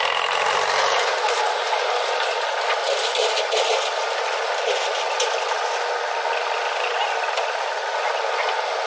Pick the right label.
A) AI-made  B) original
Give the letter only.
B